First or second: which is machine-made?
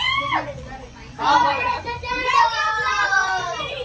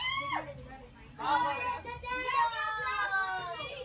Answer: first